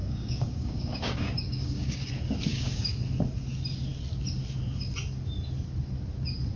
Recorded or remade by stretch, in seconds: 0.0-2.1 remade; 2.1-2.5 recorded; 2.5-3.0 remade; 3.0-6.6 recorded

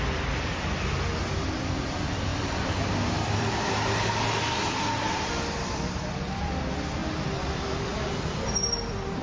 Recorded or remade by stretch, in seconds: 0.0-2.3 recorded; 2.3-3.7 remade; 3.7-7.9 recorded; 7.9-8.7 remade; 8.7-9.2 recorded

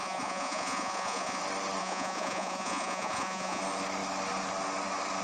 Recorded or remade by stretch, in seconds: 0.0-1.4 remade; 1.4-1.8 recorded; 1.8-3.6 remade; 3.6-5.2 recorded

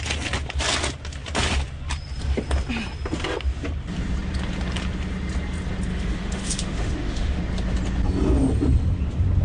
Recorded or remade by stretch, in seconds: 0.0-5.9 recorded; 5.9-7.4 remade; 7.4-9.4 recorded

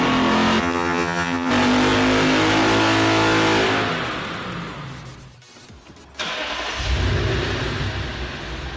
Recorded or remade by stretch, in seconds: 0.0-0.6 recorded; 0.6-1.5 remade; 1.5-8.8 recorded

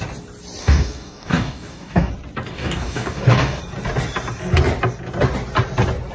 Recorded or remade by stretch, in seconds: 0.0-0.6 recorded; 0.6-2.1 remade; 2.1-2.5 recorded; 2.5-3.6 remade; 3.6-6.1 recorded